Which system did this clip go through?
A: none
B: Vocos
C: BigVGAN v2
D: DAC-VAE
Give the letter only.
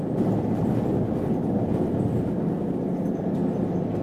A